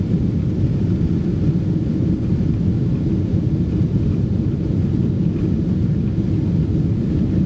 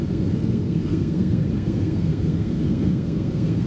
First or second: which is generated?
second